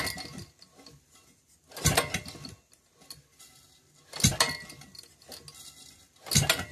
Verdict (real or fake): real